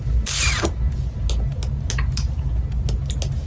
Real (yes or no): yes